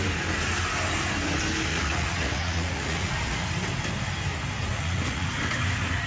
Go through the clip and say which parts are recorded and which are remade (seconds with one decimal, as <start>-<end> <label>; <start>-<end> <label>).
0.0-1.7 recorded; 1.7-3.4 remade; 3.4-4.7 recorded; 4.7-5.3 remade; 5.3-6.1 recorded